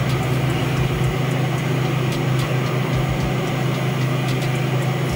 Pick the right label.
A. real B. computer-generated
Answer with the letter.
A